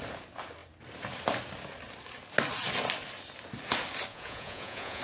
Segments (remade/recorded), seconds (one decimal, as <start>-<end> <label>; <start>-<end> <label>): 0.0-4.1 recorded; 4.1-5.0 remade